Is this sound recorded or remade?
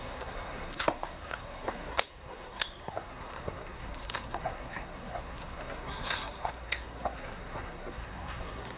remade